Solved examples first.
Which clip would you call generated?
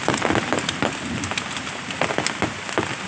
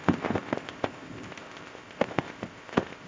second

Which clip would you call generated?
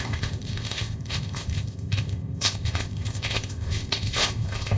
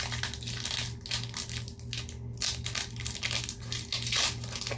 first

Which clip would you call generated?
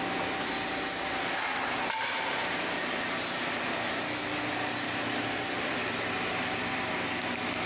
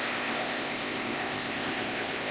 second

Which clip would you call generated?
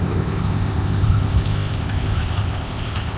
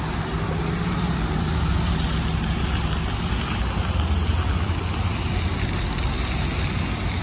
first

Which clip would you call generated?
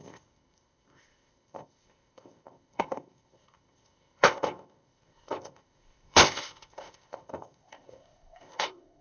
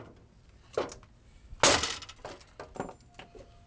first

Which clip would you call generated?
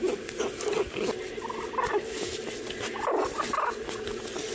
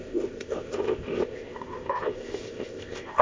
second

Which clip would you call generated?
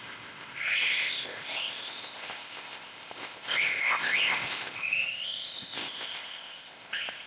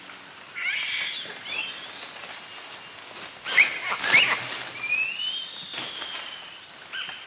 first